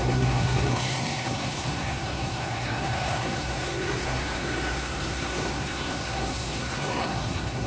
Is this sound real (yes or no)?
no